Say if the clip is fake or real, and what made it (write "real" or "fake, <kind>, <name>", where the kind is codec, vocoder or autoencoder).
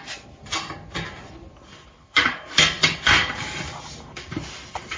fake, vocoder, BigVGAN v2